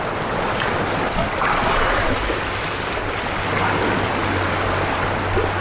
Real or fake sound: real